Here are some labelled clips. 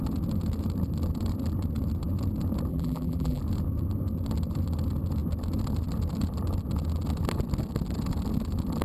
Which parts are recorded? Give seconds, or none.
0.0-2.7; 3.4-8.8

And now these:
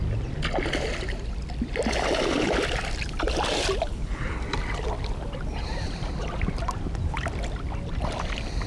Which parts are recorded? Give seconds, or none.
0.0-3.9; 4.4-8.7

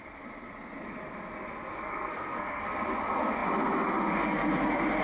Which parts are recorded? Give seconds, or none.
0.0-1.8; 2.6-5.0